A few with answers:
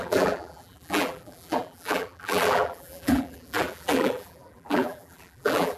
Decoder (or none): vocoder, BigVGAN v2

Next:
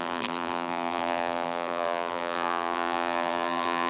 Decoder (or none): vocoder, BigVGAN v2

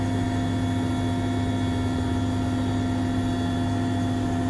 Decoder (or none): none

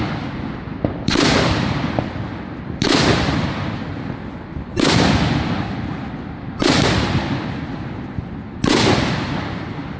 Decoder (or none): none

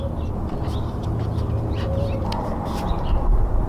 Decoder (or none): vocoder, BigVGAN v2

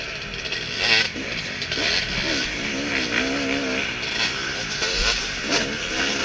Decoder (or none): none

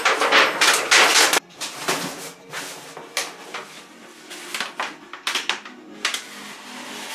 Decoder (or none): none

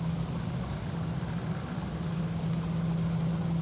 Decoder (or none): none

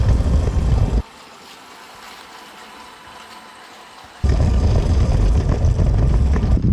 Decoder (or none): vocoder, BigVGAN v2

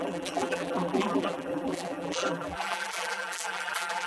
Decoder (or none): vocoder, BigVGAN v2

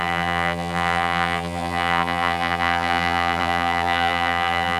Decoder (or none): vocoder, BigVGAN v2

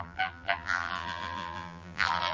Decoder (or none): vocoder, BigVGAN v2